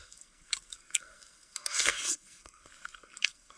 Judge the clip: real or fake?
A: fake